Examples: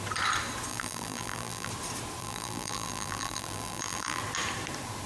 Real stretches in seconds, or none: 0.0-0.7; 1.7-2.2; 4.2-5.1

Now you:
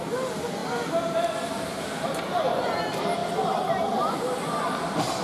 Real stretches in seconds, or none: 0.0-5.2

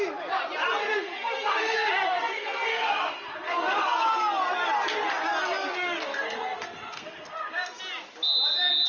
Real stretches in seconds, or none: 0.0-0.8; 4.1-6.1; 7.8-8.9